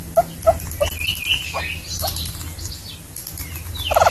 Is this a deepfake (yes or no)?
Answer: no